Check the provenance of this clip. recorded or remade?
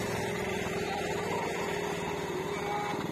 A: recorded